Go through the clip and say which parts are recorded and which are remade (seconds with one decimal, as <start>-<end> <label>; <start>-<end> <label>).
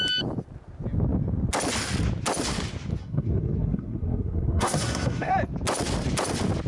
0.0-3.0 recorded; 3.0-5.3 remade; 5.3-6.7 recorded